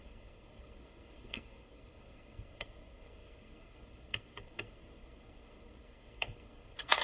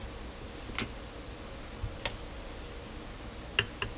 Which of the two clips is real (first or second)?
second